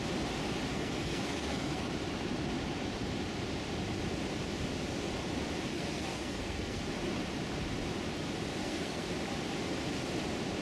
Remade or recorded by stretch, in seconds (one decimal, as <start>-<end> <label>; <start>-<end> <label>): 0.0-0.7 recorded; 0.7-1.9 remade; 1.9-5.7 recorded; 5.7-6.8 remade; 6.8-8.6 recorded; 8.6-9.1 remade; 9.1-10.6 recorded